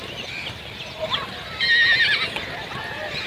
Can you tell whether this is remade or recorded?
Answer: recorded